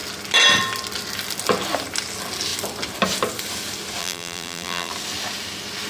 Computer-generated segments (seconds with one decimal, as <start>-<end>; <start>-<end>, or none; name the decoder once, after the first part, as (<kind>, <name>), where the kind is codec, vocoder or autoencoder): 4.0-4.9 (vocoder, BigVGAN v2)